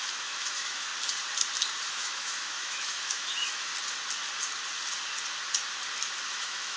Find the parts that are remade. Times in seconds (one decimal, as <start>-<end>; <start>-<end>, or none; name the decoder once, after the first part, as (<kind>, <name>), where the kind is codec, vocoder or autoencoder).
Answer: 0.0-0.9 (autoencoder, DAC-VAE); 1.9-3.7; 6.3-6.8